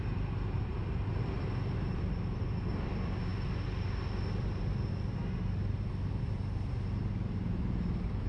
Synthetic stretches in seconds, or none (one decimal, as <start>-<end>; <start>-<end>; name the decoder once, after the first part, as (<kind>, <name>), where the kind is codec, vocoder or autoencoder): none